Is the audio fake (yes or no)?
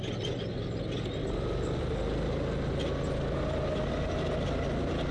no